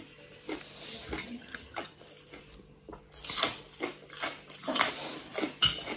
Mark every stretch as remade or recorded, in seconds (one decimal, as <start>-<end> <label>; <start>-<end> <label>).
0.0-1.2 recorded; 1.2-2.0 remade; 2.0-6.0 recorded